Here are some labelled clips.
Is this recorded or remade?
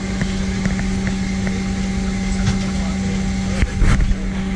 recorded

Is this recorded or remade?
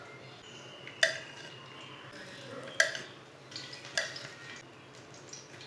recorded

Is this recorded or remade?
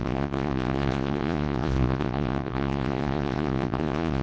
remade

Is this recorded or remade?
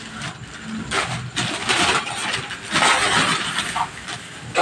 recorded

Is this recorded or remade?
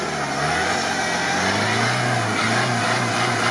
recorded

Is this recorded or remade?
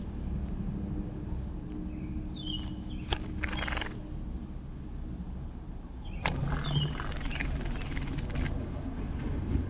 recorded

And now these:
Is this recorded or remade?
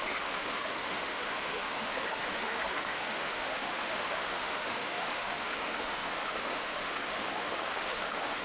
remade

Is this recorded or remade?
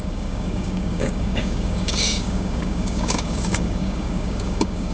remade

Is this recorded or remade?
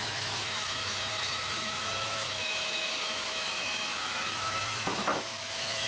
remade